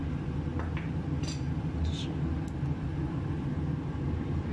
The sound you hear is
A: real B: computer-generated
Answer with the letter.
A